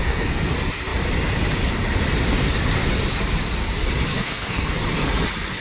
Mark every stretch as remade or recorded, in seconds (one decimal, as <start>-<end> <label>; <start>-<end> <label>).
0.0-0.5 remade; 0.5-4.1 recorded; 4.1-4.7 remade; 4.7-5.6 recorded